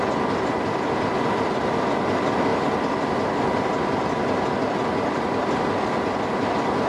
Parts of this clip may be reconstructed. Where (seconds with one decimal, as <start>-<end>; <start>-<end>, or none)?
none